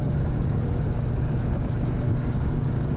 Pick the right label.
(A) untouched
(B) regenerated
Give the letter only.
B